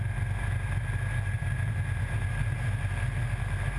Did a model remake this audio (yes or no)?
no